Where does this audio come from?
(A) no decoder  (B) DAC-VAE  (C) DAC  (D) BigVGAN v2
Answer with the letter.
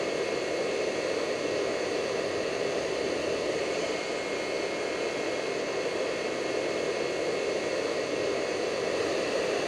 D